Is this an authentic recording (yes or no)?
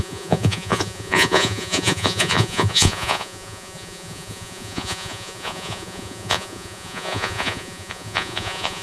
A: no